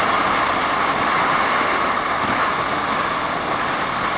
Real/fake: real